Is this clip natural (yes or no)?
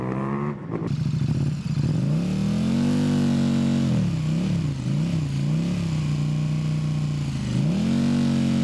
yes